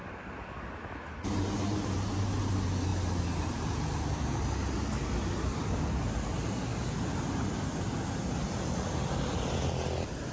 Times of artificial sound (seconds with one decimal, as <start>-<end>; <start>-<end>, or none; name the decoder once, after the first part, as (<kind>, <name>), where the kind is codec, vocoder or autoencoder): none